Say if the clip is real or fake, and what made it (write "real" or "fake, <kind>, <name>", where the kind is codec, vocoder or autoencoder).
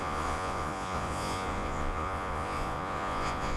fake, vocoder, Vocos